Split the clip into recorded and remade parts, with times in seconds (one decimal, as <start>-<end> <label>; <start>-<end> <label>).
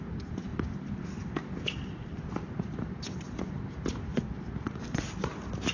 0.0-5.7 recorded